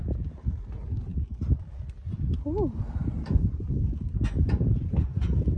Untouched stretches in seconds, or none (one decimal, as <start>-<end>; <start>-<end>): 0.0-5.6